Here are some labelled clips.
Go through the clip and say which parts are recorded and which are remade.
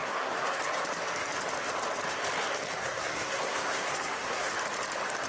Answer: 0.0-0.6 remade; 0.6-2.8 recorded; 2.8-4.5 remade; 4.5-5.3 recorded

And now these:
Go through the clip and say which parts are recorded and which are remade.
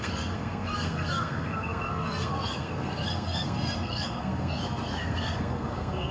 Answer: 0.0-6.1 remade